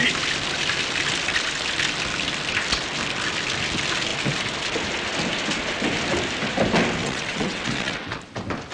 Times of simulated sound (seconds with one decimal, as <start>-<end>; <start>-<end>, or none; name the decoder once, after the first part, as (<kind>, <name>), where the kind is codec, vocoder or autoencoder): 7.0-8.2 (vocoder, WaveNeXt)